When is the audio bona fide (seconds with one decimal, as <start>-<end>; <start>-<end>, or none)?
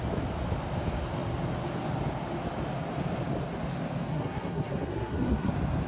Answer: 0.0-4.1; 5.5-5.9